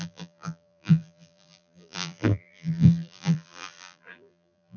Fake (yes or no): yes